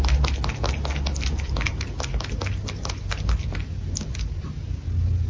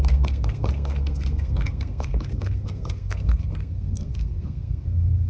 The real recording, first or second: first